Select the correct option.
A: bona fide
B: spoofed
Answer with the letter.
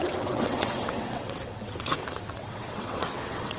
B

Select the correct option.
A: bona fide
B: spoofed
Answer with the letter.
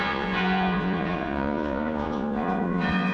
B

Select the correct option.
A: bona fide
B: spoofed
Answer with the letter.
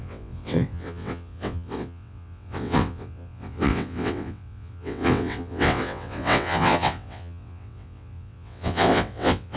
B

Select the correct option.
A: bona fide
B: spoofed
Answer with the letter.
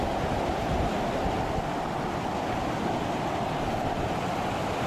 A